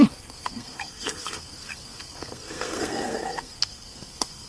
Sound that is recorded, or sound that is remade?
remade